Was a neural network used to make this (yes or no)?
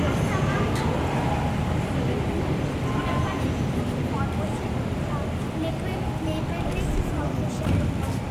no